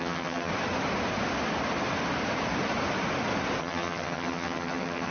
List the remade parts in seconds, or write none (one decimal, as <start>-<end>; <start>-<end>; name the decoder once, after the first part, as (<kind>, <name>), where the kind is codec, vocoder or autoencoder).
0.0-0.5 (vocoder, HiFi-GAN); 3.6-5.1